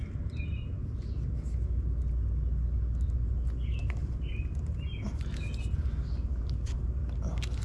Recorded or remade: recorded